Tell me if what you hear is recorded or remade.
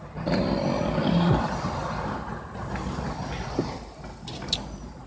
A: recorded